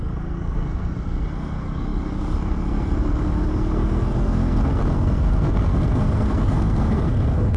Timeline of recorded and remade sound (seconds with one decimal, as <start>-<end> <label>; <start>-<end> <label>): 0.0-7.6 remade